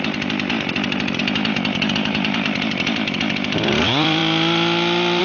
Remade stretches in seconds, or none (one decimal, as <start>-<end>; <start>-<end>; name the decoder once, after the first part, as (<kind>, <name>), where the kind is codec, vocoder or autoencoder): 0.0-1.2 (vocoder, BigVGAN v2); 2.1-4.2